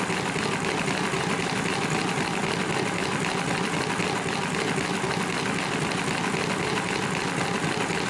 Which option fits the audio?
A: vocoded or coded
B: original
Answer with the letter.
B